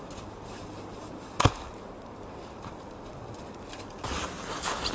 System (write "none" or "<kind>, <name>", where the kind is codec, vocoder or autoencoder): none